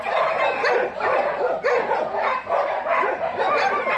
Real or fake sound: real